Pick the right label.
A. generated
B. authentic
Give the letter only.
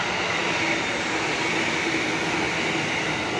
B